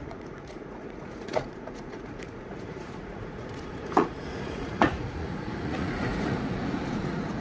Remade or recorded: remade